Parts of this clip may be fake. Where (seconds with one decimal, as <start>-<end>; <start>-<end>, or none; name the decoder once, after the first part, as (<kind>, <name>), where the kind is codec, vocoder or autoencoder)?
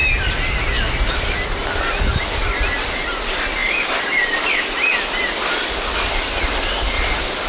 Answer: 3.6-4.5 (vocoder, BigVGAN v2)